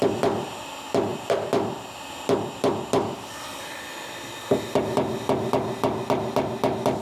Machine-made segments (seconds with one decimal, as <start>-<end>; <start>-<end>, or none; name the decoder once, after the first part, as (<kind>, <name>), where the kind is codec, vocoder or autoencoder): none